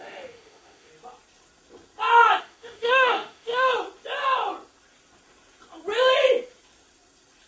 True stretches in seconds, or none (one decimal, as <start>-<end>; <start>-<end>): 0.9-2.4; 3.7-7.5